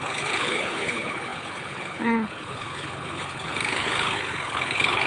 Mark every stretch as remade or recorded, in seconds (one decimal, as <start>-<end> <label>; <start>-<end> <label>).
0.0-5.1 remade